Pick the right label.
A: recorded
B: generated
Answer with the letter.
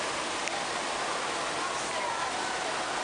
A